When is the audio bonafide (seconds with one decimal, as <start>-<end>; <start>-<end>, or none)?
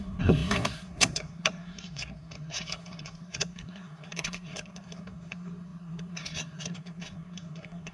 none